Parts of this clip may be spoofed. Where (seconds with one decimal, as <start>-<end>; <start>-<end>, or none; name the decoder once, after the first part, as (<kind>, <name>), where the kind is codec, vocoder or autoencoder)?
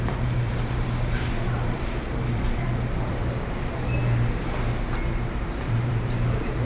0.0-4.0 (vocoder, BigVGAN v2); 5.2-6.7